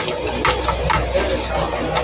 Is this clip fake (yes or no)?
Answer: no